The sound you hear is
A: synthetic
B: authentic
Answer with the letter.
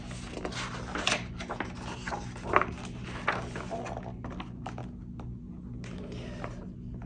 B